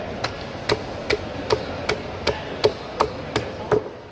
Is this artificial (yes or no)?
no